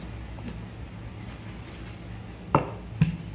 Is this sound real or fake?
real